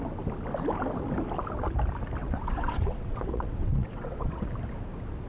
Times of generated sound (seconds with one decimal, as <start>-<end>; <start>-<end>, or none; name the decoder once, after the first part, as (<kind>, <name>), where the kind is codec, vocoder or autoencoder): 2.2-4.5 (vocoder, WaveNeXt)